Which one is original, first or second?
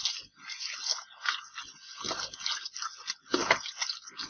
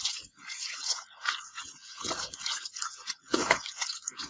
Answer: first